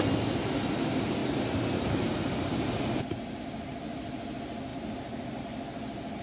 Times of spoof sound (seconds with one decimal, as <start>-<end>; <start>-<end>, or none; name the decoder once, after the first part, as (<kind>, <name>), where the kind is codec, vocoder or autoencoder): 1.2-3.4 (vocoder, BigVGAN v2); 4.7-5.4